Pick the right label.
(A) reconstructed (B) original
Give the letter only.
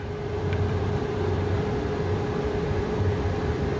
A